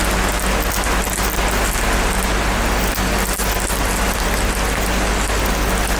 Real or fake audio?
real